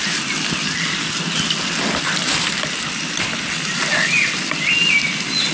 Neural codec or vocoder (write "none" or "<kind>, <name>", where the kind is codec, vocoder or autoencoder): none